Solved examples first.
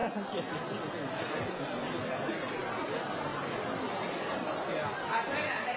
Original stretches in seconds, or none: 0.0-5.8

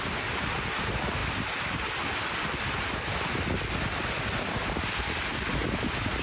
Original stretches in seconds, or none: 0.0-6.2

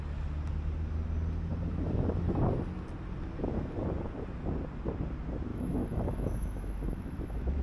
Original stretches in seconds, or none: 0.0-5.5

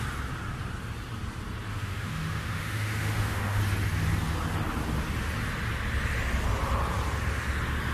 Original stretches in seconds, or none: 0.0-1.7; 3.6-7.9

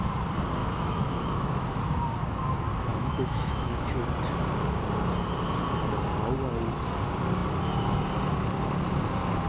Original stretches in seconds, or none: 0.0-0.6; 1.8-2.9; 4.0-9.5

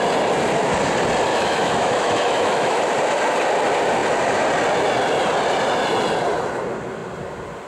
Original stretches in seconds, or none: 0.0-1.3; 2.8-7.7

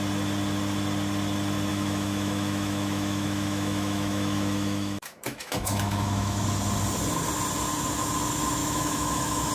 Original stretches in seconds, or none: 0.0-1.7; 6.4-8.6